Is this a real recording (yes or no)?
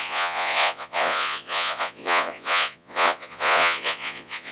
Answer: no